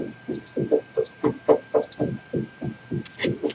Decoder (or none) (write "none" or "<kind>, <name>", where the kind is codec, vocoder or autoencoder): none